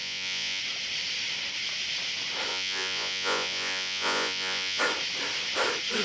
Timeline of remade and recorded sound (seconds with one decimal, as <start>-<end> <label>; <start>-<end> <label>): 0.0-0.6 remade; 0.6-2.5 recorded; 2.5-4.8 remade; 4.8-6.0 recorded